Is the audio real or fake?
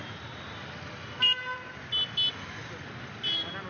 real